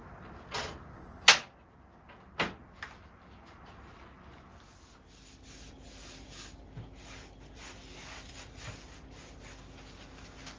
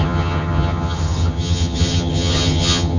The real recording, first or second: first